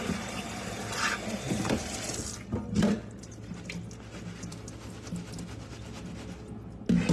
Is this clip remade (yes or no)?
no